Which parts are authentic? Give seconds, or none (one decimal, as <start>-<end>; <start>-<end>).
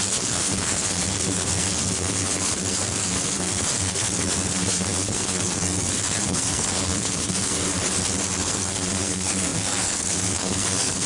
7.7-8.4